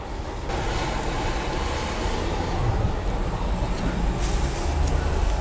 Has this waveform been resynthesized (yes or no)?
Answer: no